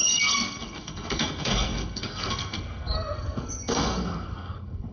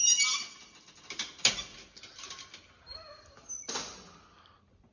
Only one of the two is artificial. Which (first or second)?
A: first